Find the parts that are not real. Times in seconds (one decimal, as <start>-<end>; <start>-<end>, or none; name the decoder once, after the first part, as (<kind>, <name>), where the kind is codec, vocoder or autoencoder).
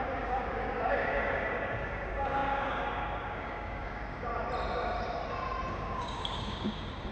0.0-4.3 (codec, DAC); 5.7-7.1